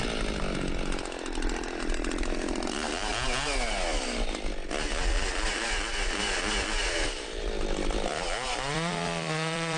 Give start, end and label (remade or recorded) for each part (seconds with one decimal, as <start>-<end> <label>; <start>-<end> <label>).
0.0-3.1 remade; 3.1-5.5 recorded; 5.5-9.8 remade